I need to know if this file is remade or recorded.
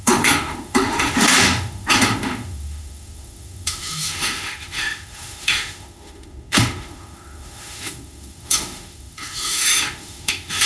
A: remade